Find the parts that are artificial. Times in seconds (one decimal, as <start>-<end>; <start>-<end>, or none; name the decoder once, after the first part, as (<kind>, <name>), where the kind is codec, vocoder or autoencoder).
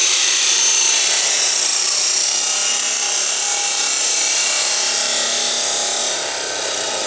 0.0-0.6 (vocoder, BigVGAN v2)